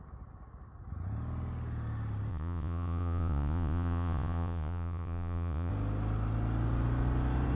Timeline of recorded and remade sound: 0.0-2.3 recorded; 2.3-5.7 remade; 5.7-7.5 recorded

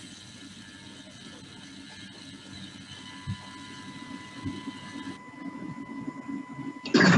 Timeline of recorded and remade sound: 0.0-7.2 recorded

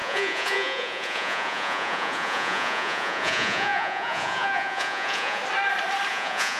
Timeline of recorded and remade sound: 0.0-5.4 remade; 5.4-6.1 recorded; 6.1-6.6 remade

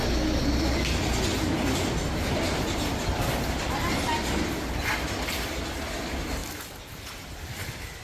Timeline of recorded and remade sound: 0.0-8.0 recorded

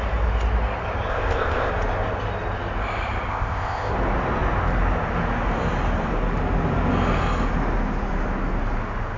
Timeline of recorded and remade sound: 0.0-1.1 recorded; 1.1-1.7 remade; 1.7-3.3 recorded; 3.3-3.9 remade; 3.9-9.2 recorded